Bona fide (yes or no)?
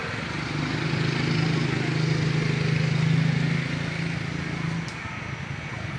yes